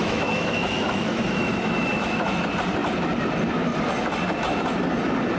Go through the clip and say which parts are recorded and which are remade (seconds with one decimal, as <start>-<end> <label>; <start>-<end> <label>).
0.0-2.4 remade; 2.4-5.4 recorded